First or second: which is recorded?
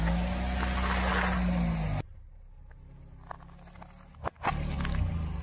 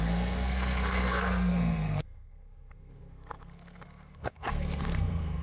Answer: first